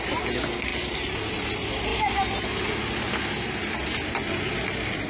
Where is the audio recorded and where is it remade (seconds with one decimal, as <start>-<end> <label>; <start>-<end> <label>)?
0.0-0.7 recorded; 0.7-1.3 remade; 1.3-5.1 recorded